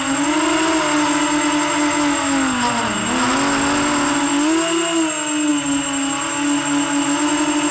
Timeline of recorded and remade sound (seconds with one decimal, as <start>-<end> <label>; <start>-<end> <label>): 0.0-7.7 recorded